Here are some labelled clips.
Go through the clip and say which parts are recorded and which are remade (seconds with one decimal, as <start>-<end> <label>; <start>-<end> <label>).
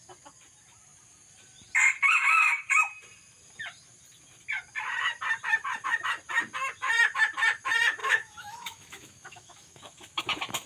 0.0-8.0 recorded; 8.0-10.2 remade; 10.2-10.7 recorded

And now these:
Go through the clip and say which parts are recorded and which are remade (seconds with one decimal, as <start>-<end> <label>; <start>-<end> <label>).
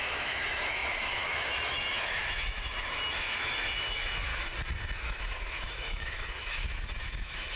0.0-4.3 remade; 4.3-5.0 recorded; 5.0-7.6 remade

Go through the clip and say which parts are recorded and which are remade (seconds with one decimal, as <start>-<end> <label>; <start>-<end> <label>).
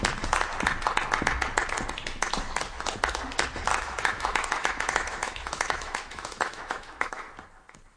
0.0-3.7 recorded; 3.7-7.3 remade; 7.3-8.0 recorded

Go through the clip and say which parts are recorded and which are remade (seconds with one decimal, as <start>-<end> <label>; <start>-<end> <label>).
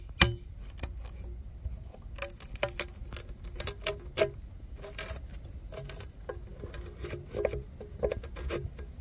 0.0-9.0 recorded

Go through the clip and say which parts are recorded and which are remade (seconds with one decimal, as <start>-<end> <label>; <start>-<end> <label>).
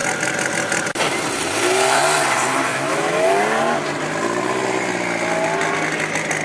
0.0-2.7 recorded; 2.7-3.4 remade; 3.4-6.4 recorded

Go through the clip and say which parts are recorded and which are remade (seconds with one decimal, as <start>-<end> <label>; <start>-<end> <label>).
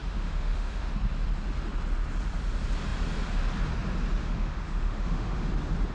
0.0-0.9 remade; 0.9-4.2 recorded; 4.2-5.5 remade; 5.5-5.9 recorded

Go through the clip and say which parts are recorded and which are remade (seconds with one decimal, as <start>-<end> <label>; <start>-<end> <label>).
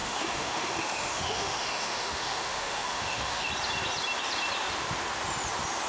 0.0-3.5 remade; 3.5-5.9 recorded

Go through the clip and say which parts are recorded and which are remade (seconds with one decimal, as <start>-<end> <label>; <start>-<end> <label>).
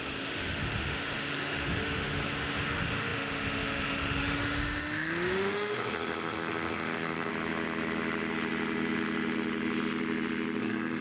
0.0-7.3 remade; 7.3-10.6 recorded; 10.6-11.0 remade